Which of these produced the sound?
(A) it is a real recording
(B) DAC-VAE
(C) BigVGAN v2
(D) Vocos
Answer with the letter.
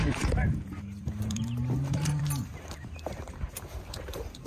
C